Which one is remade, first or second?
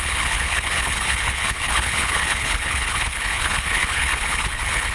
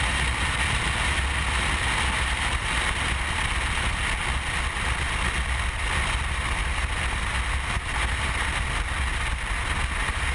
first